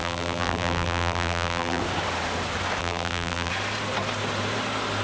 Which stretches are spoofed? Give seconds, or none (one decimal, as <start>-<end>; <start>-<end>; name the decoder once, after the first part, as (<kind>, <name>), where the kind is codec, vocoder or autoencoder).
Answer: 0.0-1.8 (vocoder, BigVGAN v2); 2.8-3.5